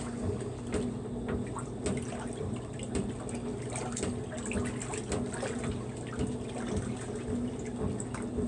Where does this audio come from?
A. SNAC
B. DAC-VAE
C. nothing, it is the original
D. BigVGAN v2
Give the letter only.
C